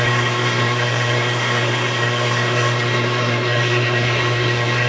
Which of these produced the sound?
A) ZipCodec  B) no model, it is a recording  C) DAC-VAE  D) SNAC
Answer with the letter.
D